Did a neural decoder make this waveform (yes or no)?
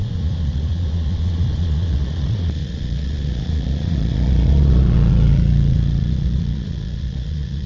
yes